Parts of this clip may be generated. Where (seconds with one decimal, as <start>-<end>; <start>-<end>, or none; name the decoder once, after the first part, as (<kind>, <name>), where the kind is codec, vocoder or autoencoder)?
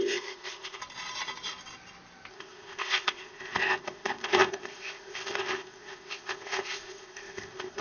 0.0-0.8 (codec, ZipCodec); 2.3-7.8